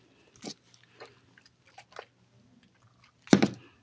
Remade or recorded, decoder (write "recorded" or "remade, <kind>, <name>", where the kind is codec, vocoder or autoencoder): recorded